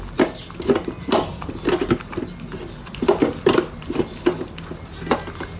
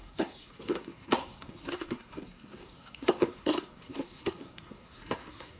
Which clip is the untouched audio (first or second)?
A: first